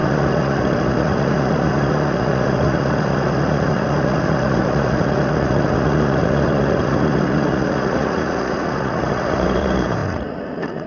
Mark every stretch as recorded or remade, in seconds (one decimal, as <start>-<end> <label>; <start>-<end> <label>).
0.0-10.9 remade